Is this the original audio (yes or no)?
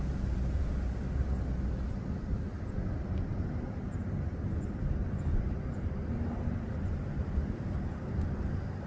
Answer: yes